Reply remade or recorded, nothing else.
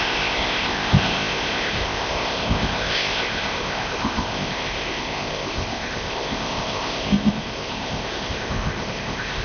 remade